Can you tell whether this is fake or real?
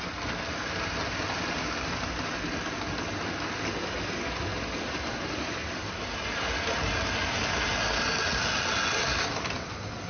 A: real